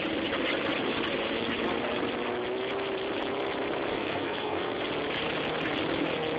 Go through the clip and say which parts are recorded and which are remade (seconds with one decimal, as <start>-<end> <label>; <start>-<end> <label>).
0.0-3.9 recorded; 3.9-4.8 remade; 4.8-6.4 recorded